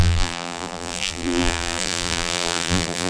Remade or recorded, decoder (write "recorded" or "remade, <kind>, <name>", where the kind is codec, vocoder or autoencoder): remade, vocoder, BigVGAN v2